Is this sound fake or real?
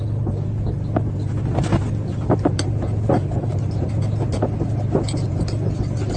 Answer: real